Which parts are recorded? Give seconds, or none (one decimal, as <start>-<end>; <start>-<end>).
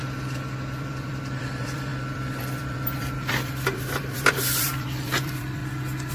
0.0-0.8; 5.6-6.1